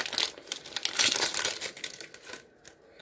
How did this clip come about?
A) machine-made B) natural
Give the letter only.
B